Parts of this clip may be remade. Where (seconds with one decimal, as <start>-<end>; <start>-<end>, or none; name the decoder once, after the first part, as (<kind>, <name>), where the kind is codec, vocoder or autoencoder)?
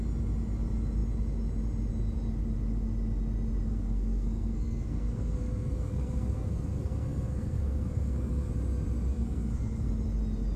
3.7-8.5 (codec, SNAC); 9.1-9.9